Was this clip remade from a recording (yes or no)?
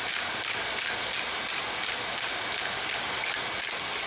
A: no